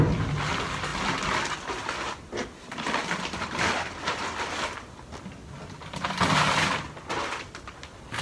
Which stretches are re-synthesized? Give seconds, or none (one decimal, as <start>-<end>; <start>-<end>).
none